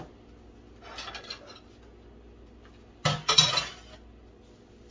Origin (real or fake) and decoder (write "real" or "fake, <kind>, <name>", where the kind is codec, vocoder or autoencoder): real